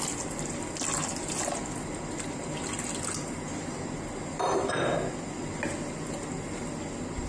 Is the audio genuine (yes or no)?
yes